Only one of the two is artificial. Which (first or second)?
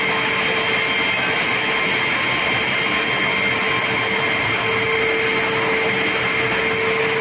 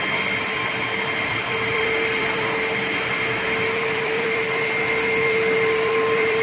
second